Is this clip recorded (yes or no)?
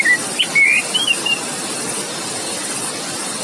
yes